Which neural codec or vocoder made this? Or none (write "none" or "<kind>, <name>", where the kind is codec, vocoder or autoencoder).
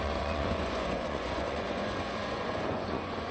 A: vocoder, Vocos